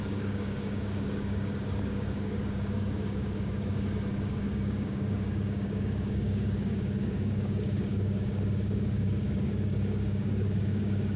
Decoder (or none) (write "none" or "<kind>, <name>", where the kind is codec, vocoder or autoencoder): codec, DAC